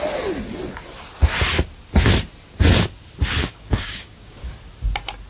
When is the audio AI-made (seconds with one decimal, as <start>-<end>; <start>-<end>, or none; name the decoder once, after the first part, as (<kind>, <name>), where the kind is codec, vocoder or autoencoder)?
3.4-4.5 (codec, DAC)